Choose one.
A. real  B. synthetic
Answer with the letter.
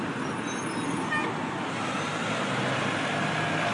A